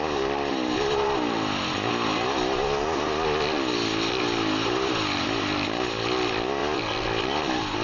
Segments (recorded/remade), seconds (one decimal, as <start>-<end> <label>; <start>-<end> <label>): 0.0-7.8 recorded